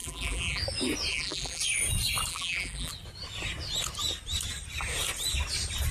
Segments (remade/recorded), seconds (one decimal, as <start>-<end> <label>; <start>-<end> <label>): 0.0-0.6 remade; 0.6-1.1 recorded; 1.1-1.6 remade; 1.6-2.3 recorded; 2.3-2.9 remade; 2.9-5.9 recorded